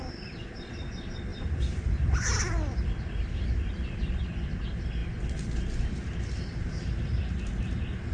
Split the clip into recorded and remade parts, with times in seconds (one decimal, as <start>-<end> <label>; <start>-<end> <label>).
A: 0.0-1.3 recorded; 1.3-4.2 remade; 4.2-8.1 recorded